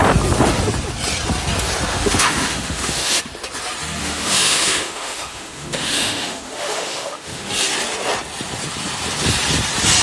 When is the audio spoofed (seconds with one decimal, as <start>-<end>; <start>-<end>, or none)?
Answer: 1.9-3.2; 4.0-7.5